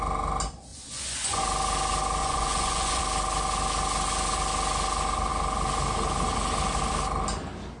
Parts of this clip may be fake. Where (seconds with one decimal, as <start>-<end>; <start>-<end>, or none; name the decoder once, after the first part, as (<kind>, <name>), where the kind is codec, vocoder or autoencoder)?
0.7-1.4 (vocoder, Vocos); 2.2-3.0